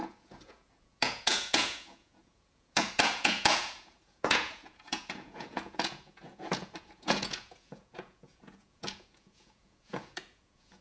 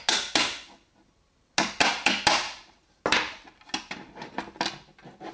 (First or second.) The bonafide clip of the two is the second